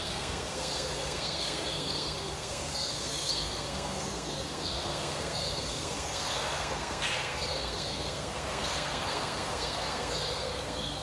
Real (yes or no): no